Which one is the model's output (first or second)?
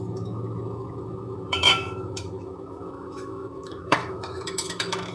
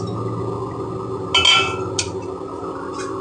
first